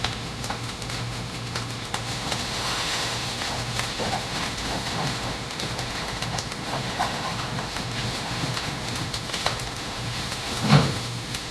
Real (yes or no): no